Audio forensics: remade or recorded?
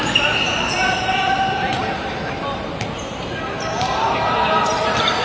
remade